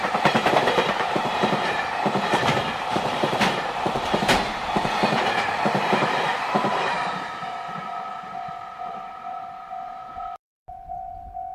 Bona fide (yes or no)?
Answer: no